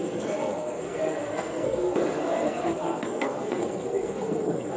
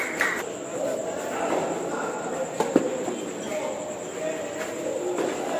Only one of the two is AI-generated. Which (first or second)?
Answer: first